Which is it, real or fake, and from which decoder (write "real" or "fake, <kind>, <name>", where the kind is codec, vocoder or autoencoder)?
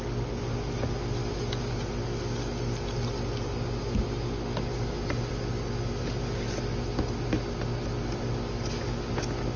real